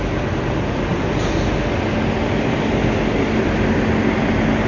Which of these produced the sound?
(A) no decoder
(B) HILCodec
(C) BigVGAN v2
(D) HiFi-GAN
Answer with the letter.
A